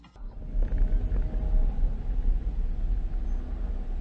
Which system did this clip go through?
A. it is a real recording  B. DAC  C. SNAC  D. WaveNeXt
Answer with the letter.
A